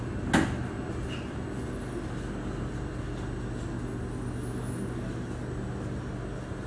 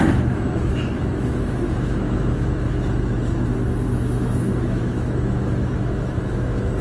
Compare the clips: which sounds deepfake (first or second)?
second